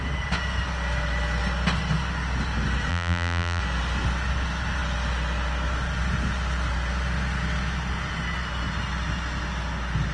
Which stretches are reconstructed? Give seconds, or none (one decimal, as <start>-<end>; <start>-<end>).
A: 2.9-3.6